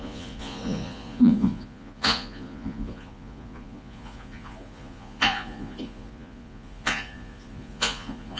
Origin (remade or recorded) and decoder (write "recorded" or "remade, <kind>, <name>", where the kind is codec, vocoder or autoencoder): remade, vocoder, Vocos